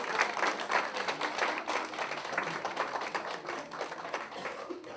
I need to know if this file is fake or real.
real